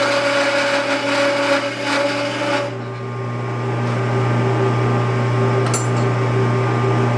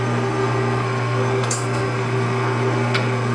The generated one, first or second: second